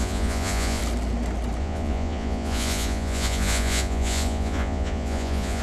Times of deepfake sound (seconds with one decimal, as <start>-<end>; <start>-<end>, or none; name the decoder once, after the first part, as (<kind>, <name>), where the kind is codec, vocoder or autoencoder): 0.0-0.8 (vocoder, Vocos); 1.6-5.6